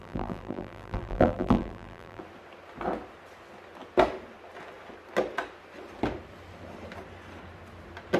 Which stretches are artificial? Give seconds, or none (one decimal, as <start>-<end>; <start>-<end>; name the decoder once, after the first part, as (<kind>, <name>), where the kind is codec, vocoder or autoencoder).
0.0-2.2 (vocoder, BigVGAN v2)